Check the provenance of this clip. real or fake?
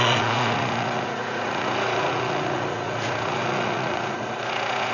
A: fake